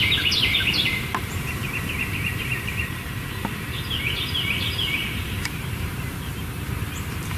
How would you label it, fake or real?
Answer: fake